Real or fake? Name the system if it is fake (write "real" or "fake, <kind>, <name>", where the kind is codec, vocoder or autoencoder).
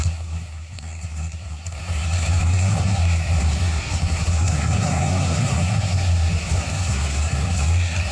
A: fake, codec, SNAC